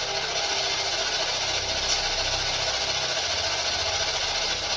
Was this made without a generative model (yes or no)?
yes